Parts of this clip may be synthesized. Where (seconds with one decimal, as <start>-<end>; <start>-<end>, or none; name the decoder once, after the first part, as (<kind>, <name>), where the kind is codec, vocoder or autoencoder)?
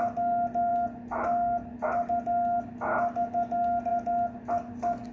none